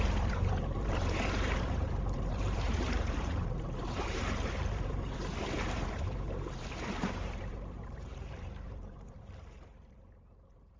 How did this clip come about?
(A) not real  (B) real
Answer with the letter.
A